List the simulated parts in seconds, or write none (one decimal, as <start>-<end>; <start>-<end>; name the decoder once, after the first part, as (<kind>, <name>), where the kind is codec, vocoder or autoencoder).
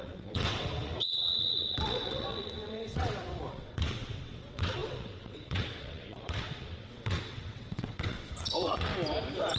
0.0-8.9 (vocoder, WaveNeXt)